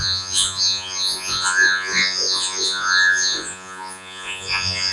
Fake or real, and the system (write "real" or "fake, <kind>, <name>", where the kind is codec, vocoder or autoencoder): fake, vocoder, Vocos